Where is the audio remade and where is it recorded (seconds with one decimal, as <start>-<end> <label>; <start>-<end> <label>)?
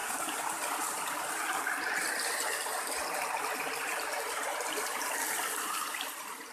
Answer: 0.0-2.7 recorded; 2.7-3.4 remade; 3.4-6.5 recorded